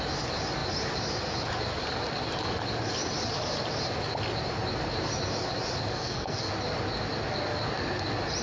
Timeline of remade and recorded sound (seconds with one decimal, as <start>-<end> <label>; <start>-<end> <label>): 0.0-5.9 recorded; 5.9-6.5 remade; 6.5-8.4 recorded